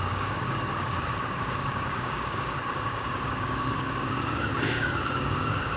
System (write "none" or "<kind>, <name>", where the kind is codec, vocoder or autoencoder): codec, DAC